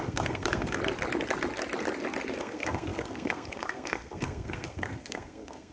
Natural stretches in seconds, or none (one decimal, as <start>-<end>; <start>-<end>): 0.8-2.4